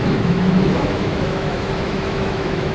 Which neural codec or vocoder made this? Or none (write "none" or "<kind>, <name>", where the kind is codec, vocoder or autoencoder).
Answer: autoencoder, DAC-VAE